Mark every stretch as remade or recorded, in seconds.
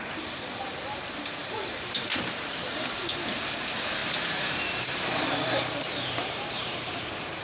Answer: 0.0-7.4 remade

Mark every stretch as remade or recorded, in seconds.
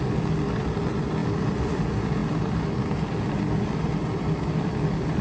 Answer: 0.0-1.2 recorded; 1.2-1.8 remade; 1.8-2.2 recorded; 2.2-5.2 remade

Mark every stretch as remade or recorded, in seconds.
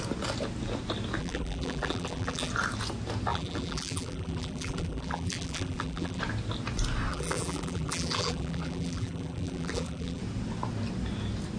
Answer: 0.0-1.2 recorded; 1.2-2.5 remade; 2.5-3.3 recorded; 3.3-6.2 remade; 6.2-7.1 recorded; 7.1-10.2 remade; 10.2-11.6 recorded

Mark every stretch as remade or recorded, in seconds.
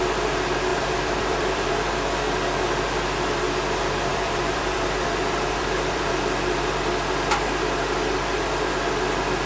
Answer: 0.0-0.7 recorded; 0.7-1.7 remade; 1.7-4.1 recorded; 4.1-6.1 remade; 6.1-9.5 recorded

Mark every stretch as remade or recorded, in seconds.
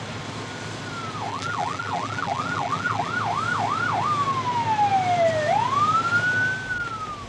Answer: 0.0-1.3 recorded; 1.3-3.1 remade; 3.1-7.3 recorded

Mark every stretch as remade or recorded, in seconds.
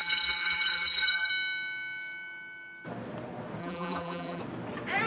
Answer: 0.0-1.3 remade; 1.3-3.6 recorded; 3.6-4.4 remade; 4.4-5.1 recorded